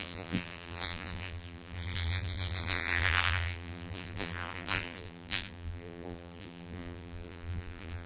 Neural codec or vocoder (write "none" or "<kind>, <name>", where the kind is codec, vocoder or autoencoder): vocoder, BigVGAN v2